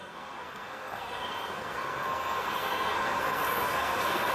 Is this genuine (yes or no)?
no